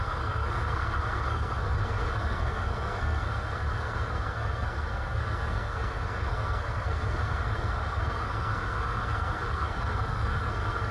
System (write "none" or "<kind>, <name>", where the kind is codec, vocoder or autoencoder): codec, SNAC